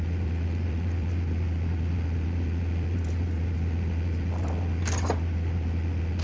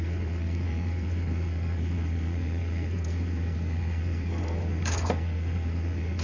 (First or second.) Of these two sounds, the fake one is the second